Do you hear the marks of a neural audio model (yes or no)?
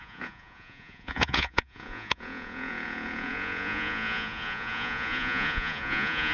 yes